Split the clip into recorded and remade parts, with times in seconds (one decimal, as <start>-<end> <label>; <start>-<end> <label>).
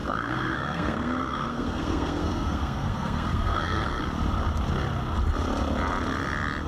0.0-4.0 remade; 4.0-6.7 recorded